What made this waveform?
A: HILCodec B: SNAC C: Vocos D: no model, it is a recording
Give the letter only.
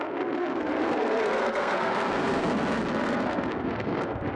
B